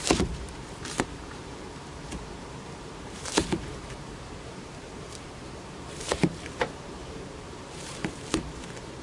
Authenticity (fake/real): fake